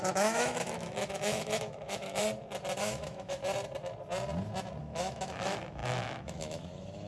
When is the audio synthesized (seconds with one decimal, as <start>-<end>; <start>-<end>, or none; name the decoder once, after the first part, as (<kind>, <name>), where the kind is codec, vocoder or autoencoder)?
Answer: 0.0-2.2 (autoencoder, DAC-VAE); 2.8-3.4; 4.8-7.1